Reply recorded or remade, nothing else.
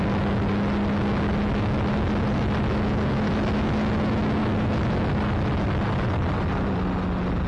recorded